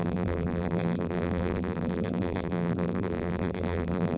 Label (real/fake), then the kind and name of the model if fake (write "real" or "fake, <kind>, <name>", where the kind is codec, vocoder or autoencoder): fake, vocoder, BigVGAN v2